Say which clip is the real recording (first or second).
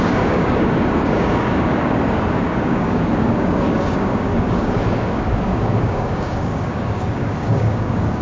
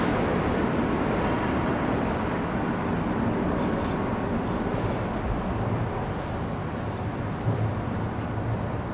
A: second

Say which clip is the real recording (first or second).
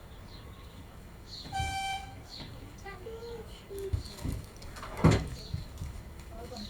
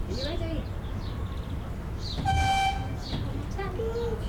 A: second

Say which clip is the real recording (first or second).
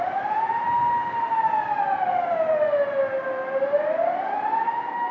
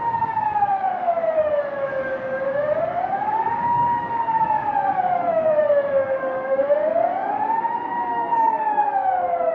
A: first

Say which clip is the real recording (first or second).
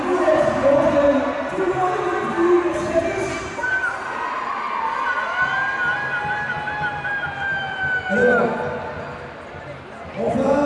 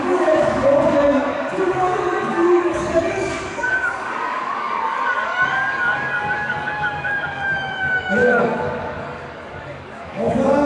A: first